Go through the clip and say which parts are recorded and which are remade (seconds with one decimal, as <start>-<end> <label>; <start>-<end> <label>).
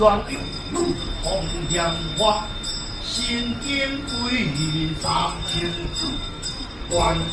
0.0-1.1 remade; 1.1-5.0 recorded; 5.0-7.3 remade